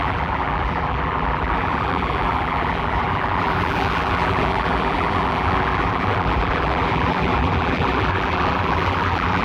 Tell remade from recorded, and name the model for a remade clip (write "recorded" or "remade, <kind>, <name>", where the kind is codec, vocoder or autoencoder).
remade, vocoder, BigVGAN v2